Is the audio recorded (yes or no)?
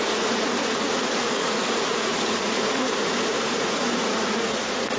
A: no